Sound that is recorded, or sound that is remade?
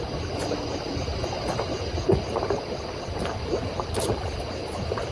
recorded